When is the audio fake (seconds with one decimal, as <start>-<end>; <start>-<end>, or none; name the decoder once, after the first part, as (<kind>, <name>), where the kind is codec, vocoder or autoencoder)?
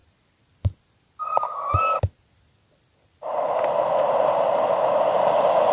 none